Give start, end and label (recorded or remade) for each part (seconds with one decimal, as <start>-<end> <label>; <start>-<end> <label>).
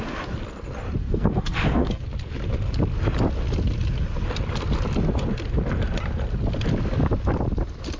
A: 0.0-1.0 recorded; 1.0-2.0 remade; 2.0-8.0 recorded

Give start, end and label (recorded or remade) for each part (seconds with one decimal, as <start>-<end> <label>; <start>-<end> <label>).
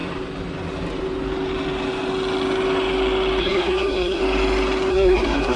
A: 0.0-3.4 recorded; 3.4-4.2 remade; 4.2-4.9 recorded; 4.9-5.6 remade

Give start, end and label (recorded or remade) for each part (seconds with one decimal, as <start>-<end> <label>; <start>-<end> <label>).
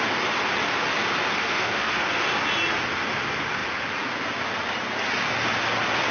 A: 0.0-1.3 recorded; 1.3-2.2 remade; 2.2-6.1 recorded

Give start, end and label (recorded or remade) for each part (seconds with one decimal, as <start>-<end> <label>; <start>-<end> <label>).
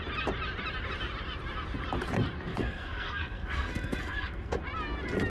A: 0.0-2.5 recorded; 2.5-4.6 remade; 4.6-5.3 recorded